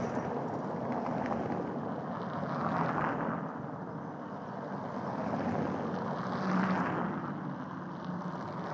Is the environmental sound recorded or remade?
recorded